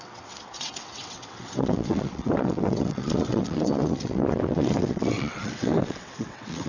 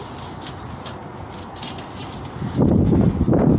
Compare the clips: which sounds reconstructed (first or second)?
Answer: first